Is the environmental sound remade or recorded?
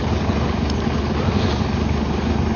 recorded